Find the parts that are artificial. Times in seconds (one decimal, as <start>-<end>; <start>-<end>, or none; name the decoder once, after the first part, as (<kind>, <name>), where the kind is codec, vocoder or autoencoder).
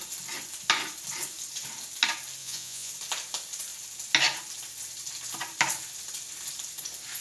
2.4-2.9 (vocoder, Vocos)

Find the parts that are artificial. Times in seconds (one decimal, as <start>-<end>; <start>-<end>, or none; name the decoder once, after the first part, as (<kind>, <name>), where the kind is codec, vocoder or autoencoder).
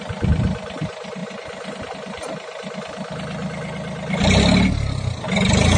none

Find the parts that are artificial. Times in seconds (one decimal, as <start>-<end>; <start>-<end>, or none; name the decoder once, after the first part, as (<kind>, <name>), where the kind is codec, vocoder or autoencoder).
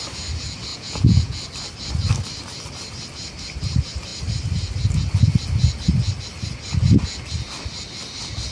0.7-1.4 (vocoder, Vocos)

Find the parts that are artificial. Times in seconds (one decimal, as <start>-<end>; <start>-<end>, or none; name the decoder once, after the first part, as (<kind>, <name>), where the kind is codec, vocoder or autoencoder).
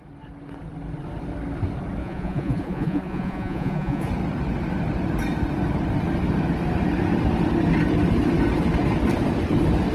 2.0-4.1 (vocoder, Vocos)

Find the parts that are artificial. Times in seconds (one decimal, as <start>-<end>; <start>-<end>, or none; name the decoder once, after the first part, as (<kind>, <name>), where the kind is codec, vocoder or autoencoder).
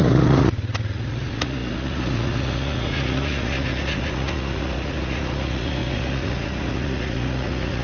0.0-7.8 (vocoder, Vocos)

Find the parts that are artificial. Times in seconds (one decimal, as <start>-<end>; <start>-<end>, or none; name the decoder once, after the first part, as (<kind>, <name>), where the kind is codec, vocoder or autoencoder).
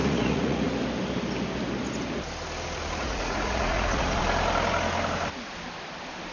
0.0-0.7 (vocoder, Vocos); 3.0-4.2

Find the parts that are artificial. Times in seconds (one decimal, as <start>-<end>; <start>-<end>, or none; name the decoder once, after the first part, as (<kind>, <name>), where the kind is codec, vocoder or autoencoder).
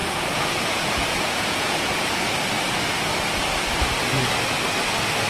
0.0-2.0 (vocoder, Vocos)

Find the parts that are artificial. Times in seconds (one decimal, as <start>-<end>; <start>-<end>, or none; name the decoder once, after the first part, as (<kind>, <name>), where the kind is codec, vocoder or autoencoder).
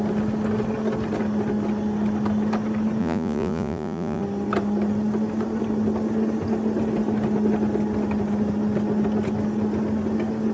3.0-4.2 (vocoder, Vocos)